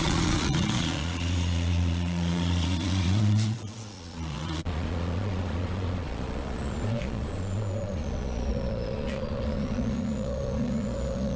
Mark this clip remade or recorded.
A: remade